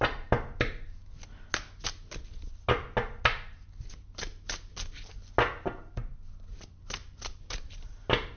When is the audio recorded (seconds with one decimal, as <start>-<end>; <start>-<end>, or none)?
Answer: 0.0-7.0; 8.0-8.4